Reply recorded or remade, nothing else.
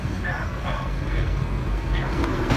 remade